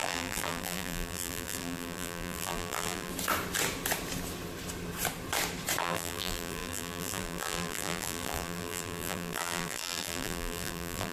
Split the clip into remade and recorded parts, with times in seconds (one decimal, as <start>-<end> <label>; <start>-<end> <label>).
0.0-3.1 remade; 3.1-5.8 recorded; 5.8-11.1 remade